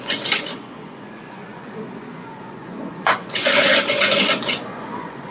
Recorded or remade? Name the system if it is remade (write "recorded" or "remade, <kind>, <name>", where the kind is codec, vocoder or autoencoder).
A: remade, vocoder, Vocos